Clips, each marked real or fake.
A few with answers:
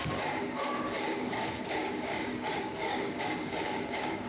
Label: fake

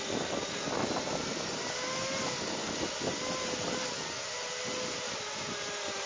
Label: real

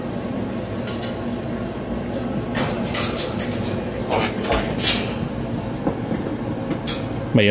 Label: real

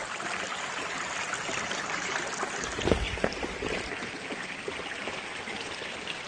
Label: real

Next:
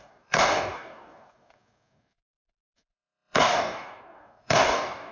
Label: fake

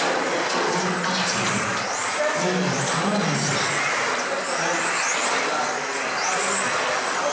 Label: real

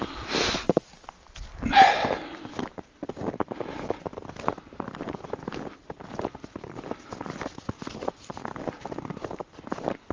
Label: real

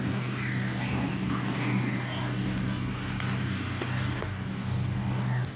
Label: fake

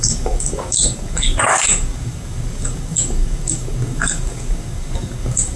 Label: fake